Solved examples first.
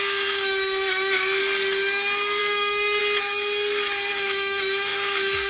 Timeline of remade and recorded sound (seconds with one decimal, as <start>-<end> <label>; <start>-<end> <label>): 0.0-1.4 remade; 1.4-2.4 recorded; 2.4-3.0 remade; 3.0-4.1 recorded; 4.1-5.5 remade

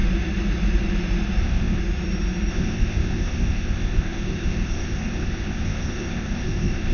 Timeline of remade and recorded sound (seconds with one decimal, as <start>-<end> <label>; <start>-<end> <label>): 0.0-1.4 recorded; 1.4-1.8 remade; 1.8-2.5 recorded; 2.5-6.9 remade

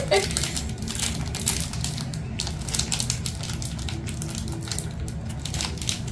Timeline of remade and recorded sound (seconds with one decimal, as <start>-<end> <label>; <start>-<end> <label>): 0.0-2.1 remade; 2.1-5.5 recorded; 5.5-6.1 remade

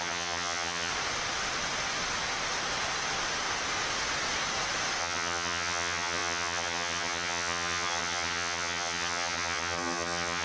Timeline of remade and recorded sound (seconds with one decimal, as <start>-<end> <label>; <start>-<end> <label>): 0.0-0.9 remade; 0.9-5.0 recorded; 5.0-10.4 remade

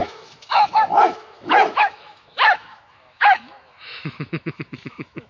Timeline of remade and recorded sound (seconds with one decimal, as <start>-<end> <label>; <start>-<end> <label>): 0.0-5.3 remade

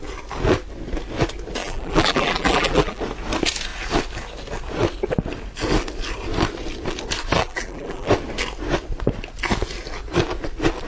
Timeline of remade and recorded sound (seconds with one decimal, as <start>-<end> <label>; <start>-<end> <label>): 0.0-1.6 recorded; 1.6-3.0 remade; 3.0-7.4 recorded; 7.4-8.1 remade; 8.1-10.9 recorded

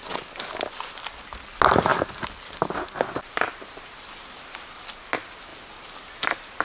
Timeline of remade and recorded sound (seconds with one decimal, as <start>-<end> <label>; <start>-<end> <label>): 0.0-6.6 recorded